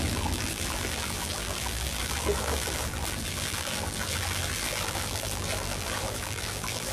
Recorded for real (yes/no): no